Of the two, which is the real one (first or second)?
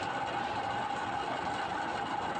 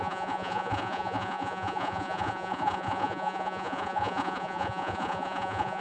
first